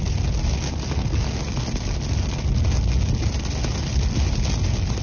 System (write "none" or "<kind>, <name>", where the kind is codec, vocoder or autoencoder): none